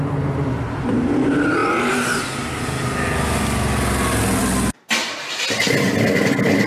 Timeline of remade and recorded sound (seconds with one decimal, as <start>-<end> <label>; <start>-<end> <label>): 0.0-6.7 recorded